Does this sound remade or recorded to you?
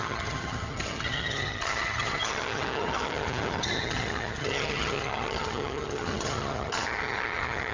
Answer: remade